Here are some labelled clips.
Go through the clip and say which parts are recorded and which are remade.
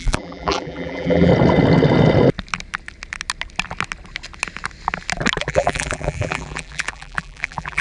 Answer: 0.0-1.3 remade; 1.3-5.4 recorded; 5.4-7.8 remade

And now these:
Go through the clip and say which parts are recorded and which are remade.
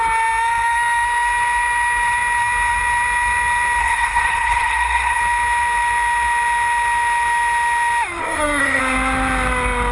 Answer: 0.0-3.8 recorded; 3.8-5.2 remade; 5.2-8.2 recorded; 8.2-8.8 remade; 8.8-9.9 recorded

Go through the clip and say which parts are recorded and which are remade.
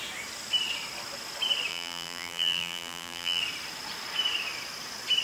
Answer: 0.0-1.7 recorded; 1.7-3.4 remade; 3.4-5.2 recorded